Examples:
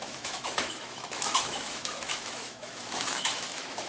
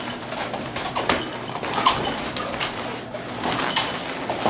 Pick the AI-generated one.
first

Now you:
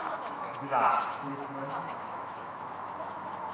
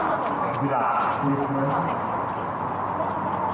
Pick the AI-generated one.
first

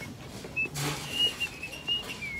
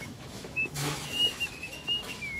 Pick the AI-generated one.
second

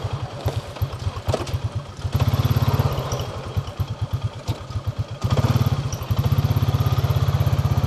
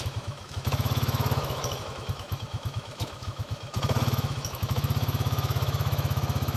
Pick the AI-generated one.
second